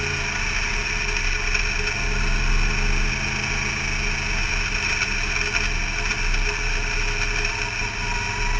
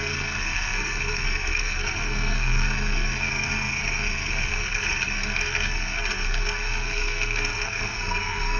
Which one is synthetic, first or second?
second